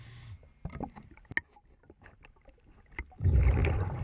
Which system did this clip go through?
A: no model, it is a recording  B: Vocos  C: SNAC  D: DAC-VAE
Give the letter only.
A